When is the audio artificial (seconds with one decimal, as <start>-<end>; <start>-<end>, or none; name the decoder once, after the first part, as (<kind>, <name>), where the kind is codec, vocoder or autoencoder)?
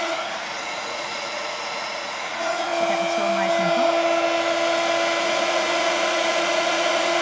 0.0-2.7 (vocoder, Vocos); 5.2-7.2